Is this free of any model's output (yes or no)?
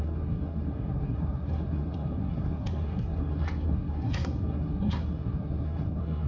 no